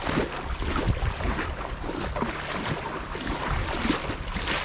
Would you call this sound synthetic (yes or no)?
no